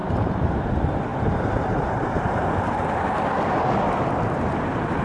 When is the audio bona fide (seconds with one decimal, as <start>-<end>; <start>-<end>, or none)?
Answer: 0.7-1.1; 3.1-5.0